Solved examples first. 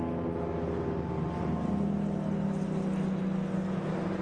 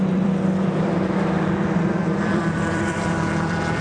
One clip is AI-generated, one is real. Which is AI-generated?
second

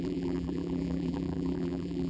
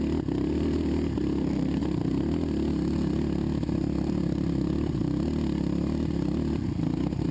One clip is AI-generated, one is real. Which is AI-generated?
first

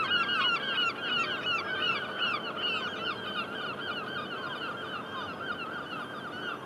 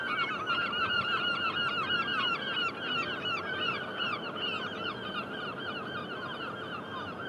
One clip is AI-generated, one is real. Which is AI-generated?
second